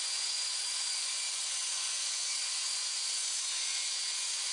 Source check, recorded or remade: remade